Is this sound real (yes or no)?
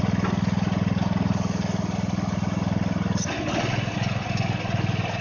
yes